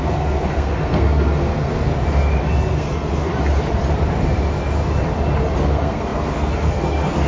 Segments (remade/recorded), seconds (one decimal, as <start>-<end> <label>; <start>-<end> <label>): 0.0-1.9 remade; 1.9-2.4 recorded; 2.4-3.3 remade; 3.3-5.6 recorded; 5.6-7.3 remade